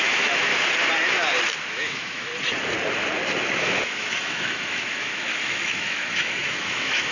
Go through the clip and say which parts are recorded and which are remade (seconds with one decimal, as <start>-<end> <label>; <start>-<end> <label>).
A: 0.0-0.5 remade; 0.5-1.7 recorded; 1.7-2.3 remade; 2.3-3.6 recorded; 3.6-7.1 remade